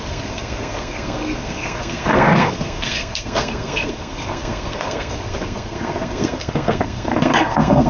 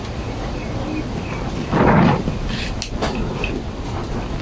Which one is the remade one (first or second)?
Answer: first